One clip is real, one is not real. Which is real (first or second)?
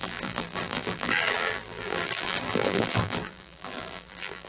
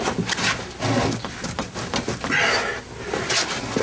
second